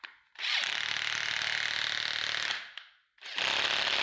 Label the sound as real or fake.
real